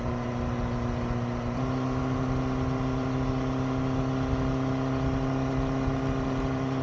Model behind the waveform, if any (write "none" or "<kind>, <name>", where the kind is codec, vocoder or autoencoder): none